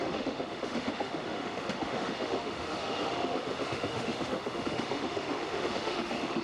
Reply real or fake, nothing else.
fake